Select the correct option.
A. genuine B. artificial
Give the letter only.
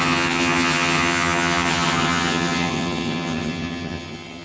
B